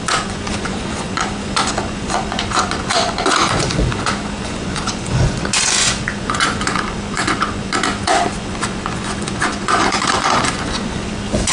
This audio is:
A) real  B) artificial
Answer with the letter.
B